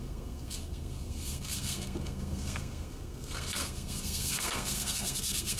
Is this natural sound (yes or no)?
no